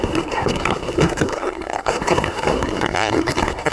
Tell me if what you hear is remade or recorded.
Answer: remade